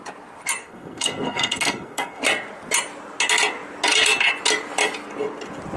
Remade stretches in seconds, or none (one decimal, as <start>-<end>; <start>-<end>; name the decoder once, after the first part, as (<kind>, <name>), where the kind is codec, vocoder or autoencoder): 0.6-2.2 (codec, SNAC)